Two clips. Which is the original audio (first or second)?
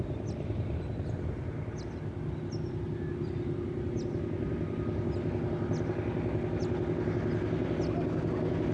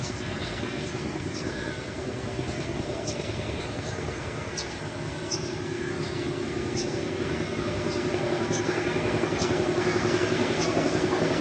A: first